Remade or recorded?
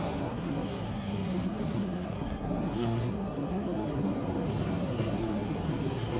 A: remade